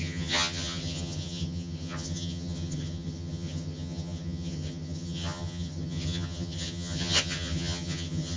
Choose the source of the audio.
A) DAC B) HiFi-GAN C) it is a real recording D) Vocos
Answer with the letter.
B